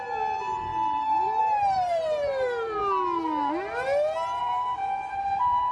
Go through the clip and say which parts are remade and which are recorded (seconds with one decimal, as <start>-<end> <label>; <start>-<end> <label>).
0.0-2.8 remade; 2.8-4.4 recorded; 4.4-5.7 remade